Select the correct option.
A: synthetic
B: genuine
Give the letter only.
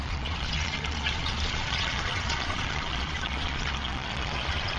A